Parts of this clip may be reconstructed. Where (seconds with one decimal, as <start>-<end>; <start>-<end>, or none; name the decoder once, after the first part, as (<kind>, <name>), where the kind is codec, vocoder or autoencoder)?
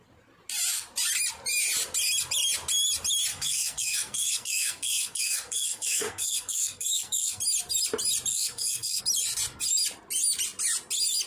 3.3-7.4 (codec, SNAC); 8.3-9.0